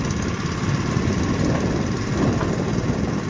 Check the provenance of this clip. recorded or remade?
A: recorded